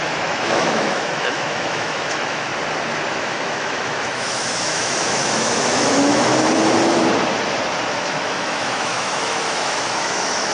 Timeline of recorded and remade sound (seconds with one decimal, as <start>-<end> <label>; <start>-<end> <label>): 0.0-2.5 remade; 2.5-3.1 recorded; 3.1-6.3 remade; 6.3-7.9 recorded; 7.9-10.5 remade